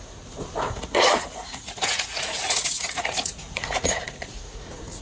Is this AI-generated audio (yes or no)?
yes